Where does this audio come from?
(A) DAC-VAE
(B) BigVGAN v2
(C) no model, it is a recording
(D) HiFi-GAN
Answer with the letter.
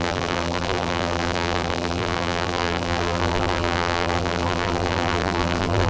B